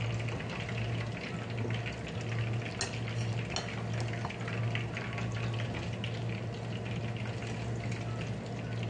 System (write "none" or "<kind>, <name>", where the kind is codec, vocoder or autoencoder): none